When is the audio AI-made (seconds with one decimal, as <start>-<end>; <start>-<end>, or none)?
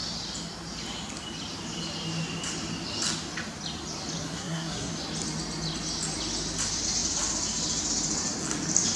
4.2-4.9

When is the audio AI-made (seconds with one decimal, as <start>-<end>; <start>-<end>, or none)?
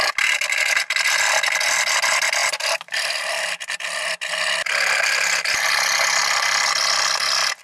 none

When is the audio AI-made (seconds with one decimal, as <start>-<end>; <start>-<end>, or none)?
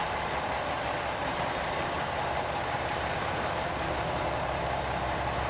0.0-0.7; 1.2-4.5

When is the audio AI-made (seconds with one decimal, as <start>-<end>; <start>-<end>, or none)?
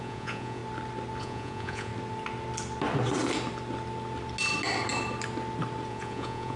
0.0-0.6; 1.2-1.9; 5.9-6.6